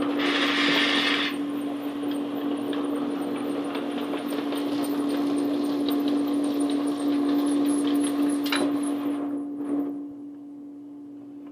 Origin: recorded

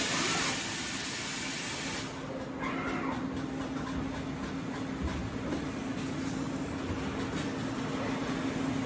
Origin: recorded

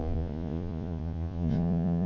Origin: remade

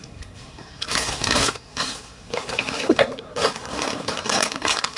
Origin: remade